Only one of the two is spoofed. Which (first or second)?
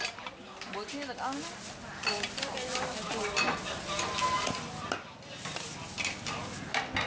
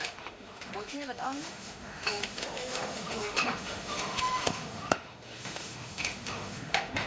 second